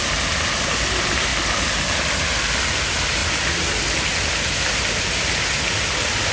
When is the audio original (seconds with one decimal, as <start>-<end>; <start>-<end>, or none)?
0.0-6.3